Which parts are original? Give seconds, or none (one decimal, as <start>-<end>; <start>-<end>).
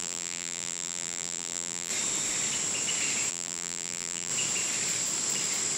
1.9-3.3; 4.3-5.8